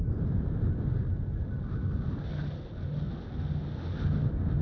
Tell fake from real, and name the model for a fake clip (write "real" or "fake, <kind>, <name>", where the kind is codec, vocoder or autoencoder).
real